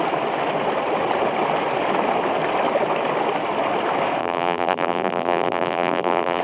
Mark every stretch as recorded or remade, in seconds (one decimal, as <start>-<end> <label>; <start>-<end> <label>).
0.0-4.2 recorded; 4.2-6.4 remade